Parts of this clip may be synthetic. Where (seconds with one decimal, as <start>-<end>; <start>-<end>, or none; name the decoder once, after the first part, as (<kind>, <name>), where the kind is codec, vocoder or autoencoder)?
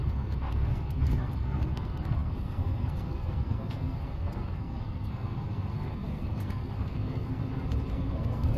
0.0-7.4 (codec, SNAC); 7.9-8.6